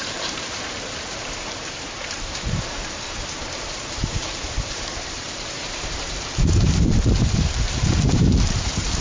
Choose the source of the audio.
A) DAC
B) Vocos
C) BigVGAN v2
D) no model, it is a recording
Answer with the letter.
C